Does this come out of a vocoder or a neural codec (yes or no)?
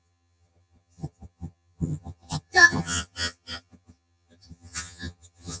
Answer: yes